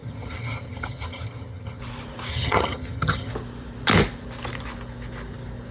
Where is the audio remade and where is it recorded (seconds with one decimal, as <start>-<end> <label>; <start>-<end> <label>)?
0.0-1.8 remade; 1.8-2.3 recorded; 2.3-3.3 remade; 3.3-5.7 recorded